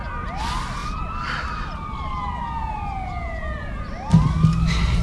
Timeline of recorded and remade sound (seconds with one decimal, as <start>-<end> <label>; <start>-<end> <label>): 0.0-5.0 recorded